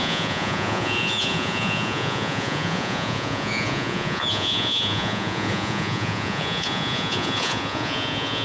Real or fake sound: fake